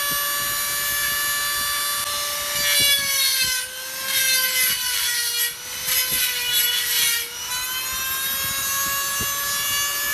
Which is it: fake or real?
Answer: real